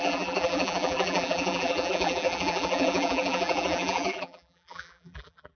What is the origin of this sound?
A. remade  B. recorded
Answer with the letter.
A